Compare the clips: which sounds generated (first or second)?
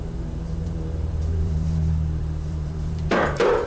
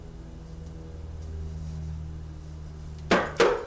first